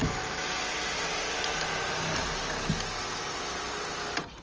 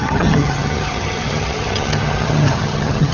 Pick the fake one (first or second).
second